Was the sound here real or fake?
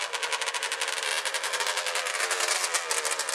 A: real